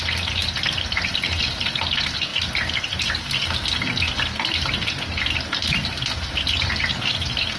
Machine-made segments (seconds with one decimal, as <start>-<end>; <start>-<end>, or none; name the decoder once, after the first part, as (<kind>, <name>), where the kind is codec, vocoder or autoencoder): none